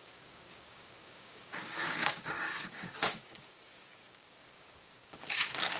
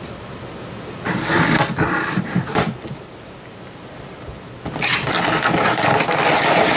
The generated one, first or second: first